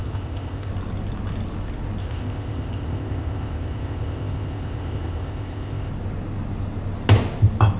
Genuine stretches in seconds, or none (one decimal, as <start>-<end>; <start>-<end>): 0.7-2.0; 5.9-7.8